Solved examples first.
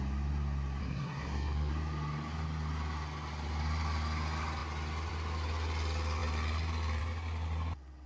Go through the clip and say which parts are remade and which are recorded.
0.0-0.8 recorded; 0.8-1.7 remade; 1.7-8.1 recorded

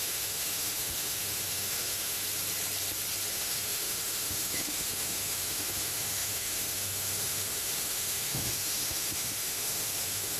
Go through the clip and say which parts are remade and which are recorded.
0.0-2.2 remade; 2.2-3.3 recorded; 3.3-10.4 remade

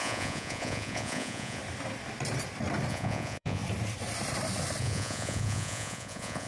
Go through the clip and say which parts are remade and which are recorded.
0.0-1.6 remade; 1.6-2.9 recorded; 2.9-3.6 remade; 3.6-4.8 recorded; 4.8-6.5 remade

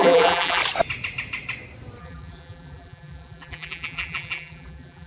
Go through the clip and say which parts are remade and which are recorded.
0.0-0.6 remade; 0.6-2.0 recorded; 2.0-5.1 remade

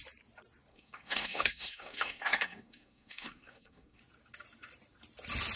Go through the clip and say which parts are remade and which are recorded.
0.0-0.7 recorded; 0.7-4.0 remade; 4.0-5.6 recorded

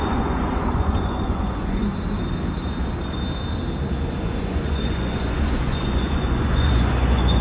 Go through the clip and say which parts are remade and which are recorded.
0.0-1.9 remade; 1.9-4.2 recorded; 4.2-7.4 remade

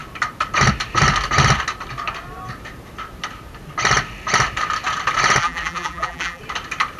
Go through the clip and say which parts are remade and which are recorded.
0.0-5.4 recorded; 5.4-6.4 remade; 6.4-7.0 recorded